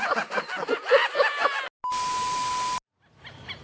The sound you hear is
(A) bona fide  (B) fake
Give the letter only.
A